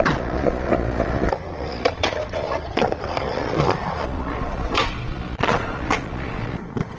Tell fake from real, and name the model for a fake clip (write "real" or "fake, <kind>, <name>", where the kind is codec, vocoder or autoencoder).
fake, vocoder, Vocos